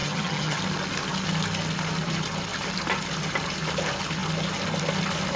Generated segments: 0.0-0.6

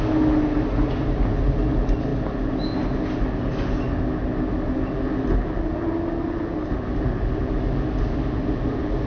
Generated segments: none